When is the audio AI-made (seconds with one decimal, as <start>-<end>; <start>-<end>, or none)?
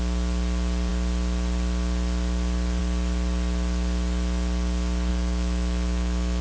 5.1-6.4